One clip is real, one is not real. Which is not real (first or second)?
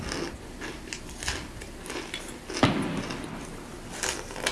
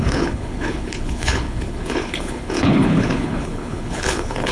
second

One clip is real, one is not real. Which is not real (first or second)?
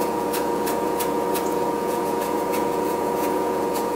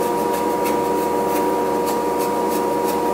first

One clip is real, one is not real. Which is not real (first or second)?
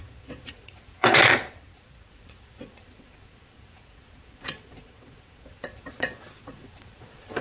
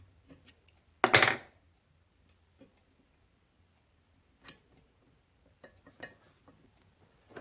first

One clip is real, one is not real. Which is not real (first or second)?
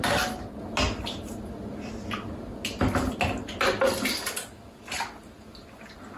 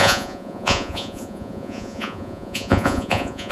second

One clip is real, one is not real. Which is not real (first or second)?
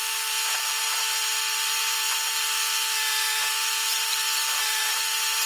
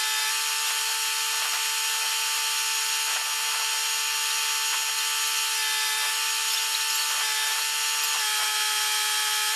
first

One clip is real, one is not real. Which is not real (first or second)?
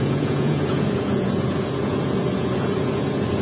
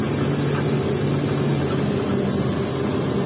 first